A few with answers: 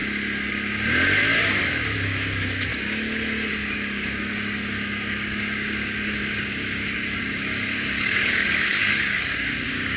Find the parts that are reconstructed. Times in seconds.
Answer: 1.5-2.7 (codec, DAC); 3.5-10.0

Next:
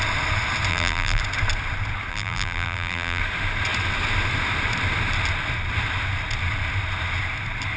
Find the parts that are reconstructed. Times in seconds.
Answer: 0.7-1.2 (vocoder, BigVGAN v2); 2.1-3.2

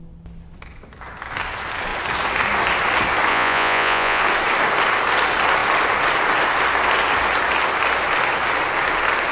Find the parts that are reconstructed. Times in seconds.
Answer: 3.3-4.2 (vocoder, Vocos)

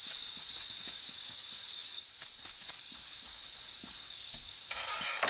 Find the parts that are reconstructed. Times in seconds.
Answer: 0.0-5.3 (codec, DAC)